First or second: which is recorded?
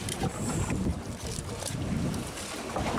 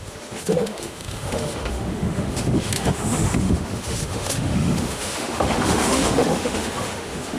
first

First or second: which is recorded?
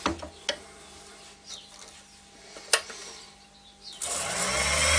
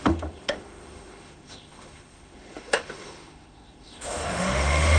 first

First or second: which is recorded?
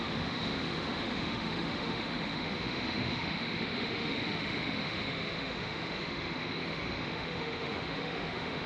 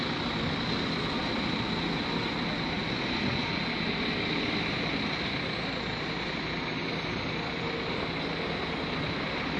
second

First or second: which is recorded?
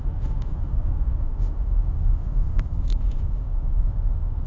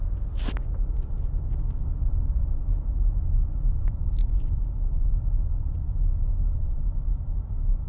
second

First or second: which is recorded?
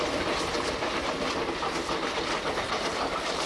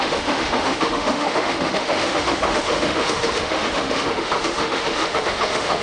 first